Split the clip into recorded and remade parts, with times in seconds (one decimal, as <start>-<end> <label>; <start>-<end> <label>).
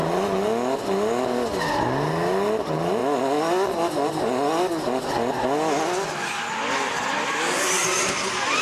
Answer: 0.0-8.6 recorded